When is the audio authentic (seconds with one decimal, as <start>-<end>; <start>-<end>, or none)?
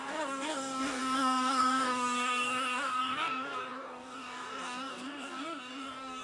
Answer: none